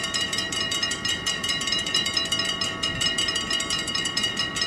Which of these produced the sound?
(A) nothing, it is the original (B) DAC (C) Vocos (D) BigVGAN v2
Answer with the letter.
D